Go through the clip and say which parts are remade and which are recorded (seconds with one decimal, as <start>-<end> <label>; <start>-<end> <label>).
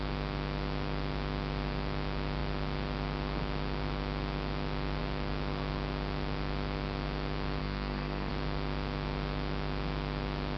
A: 0.0-7.6 recorded; 7.6-8.3 remade; 8.3-10.6 recorded